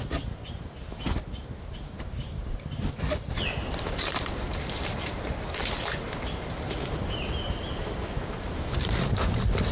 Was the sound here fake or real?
fake